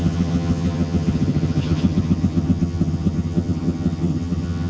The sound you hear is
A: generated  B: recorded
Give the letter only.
A